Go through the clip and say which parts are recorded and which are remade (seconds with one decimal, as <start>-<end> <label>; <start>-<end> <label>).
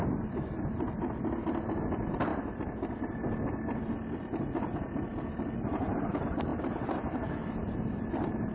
0.0-8.5 recorded